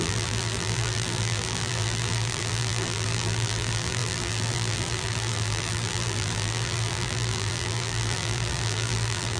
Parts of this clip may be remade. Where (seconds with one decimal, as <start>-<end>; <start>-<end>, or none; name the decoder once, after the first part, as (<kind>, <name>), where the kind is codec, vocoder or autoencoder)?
0.0-9.4 (vocoder, BigVGAN v2)

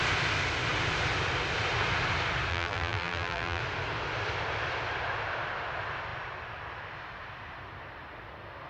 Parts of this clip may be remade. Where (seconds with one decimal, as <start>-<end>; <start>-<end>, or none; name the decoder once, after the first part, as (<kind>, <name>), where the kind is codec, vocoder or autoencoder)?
2.5-3.6 (vocoder, BigVGAN v2)

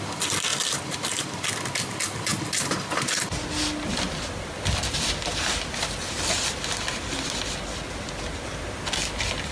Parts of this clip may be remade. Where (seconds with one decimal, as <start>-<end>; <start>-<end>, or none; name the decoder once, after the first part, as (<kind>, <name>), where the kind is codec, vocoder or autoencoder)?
0.5-1.5 (vocoder, BigVGAN v2)

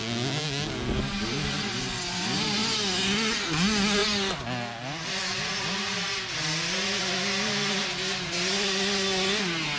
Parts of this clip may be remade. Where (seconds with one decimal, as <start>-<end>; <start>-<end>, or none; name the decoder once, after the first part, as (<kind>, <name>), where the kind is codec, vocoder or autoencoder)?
none

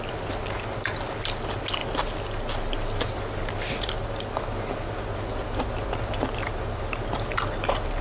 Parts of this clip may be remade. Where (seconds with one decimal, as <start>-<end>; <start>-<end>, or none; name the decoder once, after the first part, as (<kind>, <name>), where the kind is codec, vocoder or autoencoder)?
none